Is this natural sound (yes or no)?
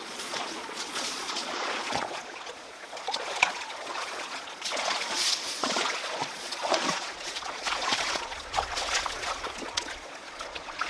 no